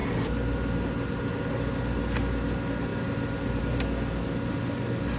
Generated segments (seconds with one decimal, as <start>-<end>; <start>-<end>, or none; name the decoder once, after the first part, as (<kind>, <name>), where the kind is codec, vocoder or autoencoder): none